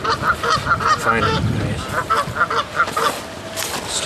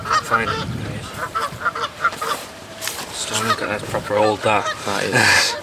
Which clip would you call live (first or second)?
first